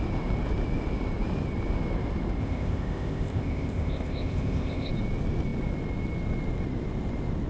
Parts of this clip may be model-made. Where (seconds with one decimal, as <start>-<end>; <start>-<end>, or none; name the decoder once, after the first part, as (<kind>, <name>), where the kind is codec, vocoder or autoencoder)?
2.4-4.9 (codec, ZipCodec)